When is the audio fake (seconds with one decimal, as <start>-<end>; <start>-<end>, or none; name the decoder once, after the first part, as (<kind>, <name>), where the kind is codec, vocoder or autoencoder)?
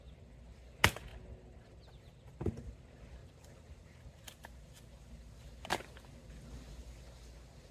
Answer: none